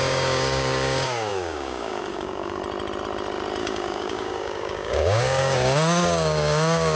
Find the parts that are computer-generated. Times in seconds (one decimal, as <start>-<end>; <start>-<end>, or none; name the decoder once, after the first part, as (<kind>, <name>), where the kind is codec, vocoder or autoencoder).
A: 0.0-2.6 (codec, DAC); 3.6-7.0